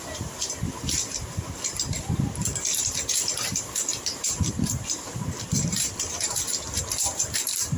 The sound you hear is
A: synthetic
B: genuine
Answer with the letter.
A